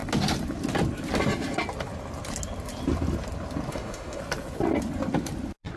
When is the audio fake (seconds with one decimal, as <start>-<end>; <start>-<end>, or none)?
3.7-4.2